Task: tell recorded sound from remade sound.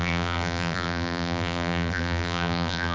remade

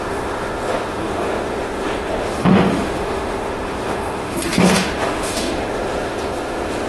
remade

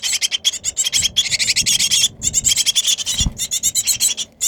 recorded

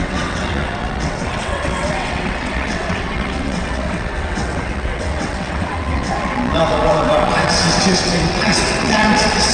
remade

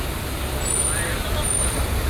recorded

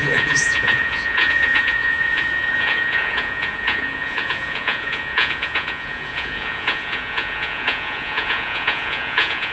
remade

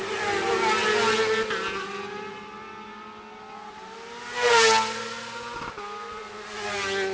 recorded